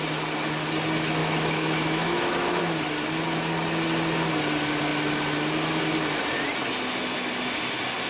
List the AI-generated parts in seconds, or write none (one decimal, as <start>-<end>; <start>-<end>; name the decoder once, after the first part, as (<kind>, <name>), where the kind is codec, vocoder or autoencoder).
1.2-2.6 (autoencoder, DAC-VAE)

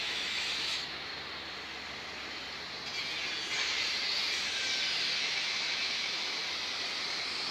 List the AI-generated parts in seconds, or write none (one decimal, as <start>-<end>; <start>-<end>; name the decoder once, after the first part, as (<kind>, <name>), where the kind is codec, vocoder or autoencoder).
0.0-1.1 (autoencoder, DAC-VAE); 5.2-6.4